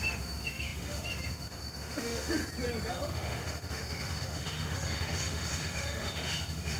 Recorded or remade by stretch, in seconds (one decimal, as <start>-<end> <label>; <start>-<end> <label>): 0.0-2.4 remade; 2.4-2.9 recorded; 2.9-6.8 remade